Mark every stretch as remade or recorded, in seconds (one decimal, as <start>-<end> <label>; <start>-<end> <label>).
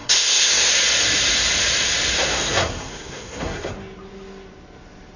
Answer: 0.0-0.7 remade; 0.7-2.2 recorded; 2.2-3.7 remade; 3.7-5.2 recorded